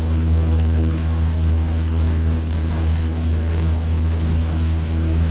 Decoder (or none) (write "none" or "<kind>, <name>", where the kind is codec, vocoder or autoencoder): codec, DAC